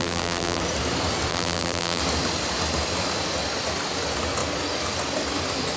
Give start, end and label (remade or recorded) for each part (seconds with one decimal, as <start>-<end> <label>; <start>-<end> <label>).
0.0-0.6 remade; 0.6-1.3 recorded; 1.3-2.0 remade; 2.0-5.8 recorded